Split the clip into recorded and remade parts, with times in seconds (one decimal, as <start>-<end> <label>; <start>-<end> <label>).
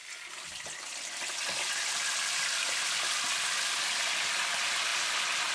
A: 0.0-4.9 recorded; 4.9-5.5 remade